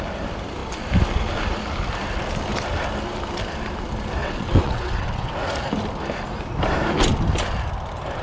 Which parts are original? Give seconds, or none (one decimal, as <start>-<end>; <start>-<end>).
0.0-4.2; 5.3-8.2

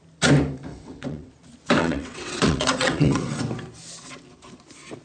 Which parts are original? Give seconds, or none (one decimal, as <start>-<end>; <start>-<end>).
0.0-0.7; 1.3-1.8; 3.4-5.0